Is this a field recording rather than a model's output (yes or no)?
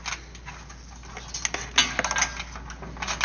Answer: yes